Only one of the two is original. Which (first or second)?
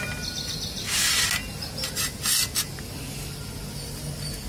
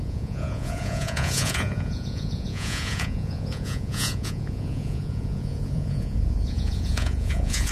first